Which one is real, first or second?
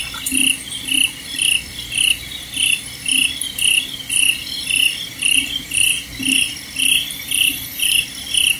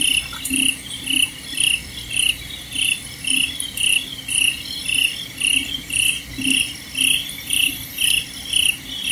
first